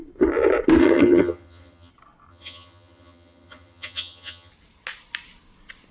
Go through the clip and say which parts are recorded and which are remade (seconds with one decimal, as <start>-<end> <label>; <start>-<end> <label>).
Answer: 0.0-0.8 recorded; 0.8-1.9 remade; 1.9-2.3 recorded; 2.3-4.5 remade; 4.5-5.9 recorded